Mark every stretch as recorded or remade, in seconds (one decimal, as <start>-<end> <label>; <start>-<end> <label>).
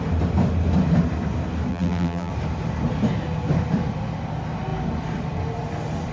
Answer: 0.0-1.7 recorded; 1.7-2.3 remade; 2.3-6.1 recorded